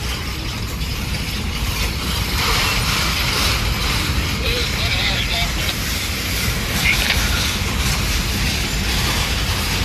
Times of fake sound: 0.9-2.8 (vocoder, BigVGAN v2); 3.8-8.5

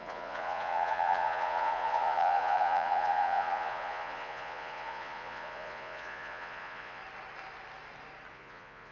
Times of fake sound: 0.0-7.0 (vocoder, Vocos); 8.3-8.9

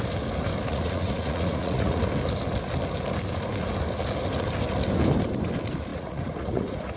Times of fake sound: 0.7-2.0 (vocoder, Vocos); 5.9-7.0